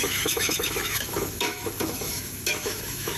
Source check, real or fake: fake